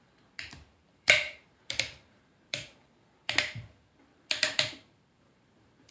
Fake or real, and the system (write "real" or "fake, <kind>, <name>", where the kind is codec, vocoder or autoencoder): fake, vocoder, BigVGAN v2